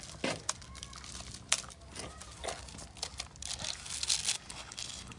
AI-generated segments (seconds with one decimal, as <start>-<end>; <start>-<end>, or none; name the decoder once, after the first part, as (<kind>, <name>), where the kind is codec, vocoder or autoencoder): 4.5-5.2 (codec, HILCodec)